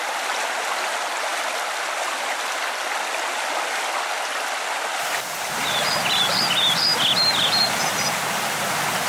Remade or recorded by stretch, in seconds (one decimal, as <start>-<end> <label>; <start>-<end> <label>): 0.0-9.1 recorded